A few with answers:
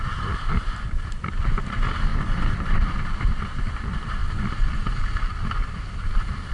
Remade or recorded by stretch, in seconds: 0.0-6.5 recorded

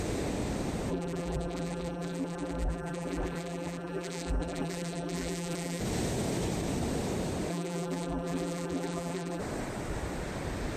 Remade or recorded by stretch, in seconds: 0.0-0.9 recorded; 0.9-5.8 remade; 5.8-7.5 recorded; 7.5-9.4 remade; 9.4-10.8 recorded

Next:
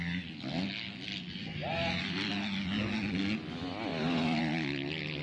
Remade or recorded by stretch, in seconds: 0.0-3.9 recorded; 3.9-4.4 remade; 4.4-5.2 recorded

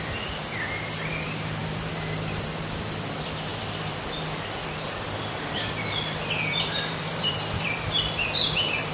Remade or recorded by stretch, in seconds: 0.0-8.9 remade